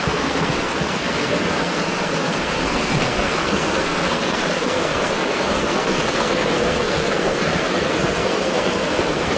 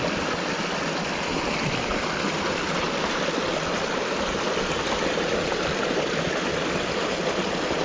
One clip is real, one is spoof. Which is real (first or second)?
second